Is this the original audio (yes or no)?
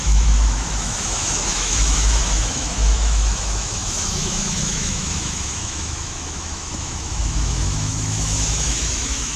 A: no